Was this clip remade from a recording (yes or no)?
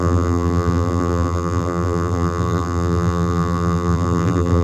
yes